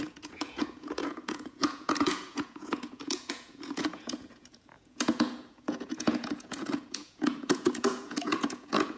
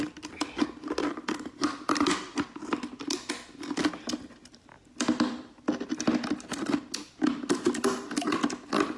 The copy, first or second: first